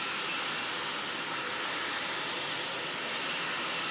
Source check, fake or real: real